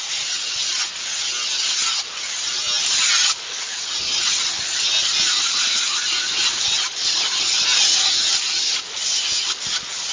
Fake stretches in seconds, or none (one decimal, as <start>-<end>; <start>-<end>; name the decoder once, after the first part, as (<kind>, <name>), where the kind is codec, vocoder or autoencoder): none